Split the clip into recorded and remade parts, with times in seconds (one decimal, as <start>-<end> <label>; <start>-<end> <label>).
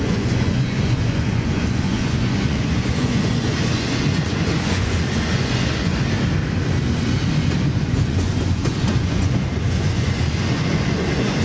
0.0-5.9 remade; 5.9-7.4 recorded; 7.4-11.4 remade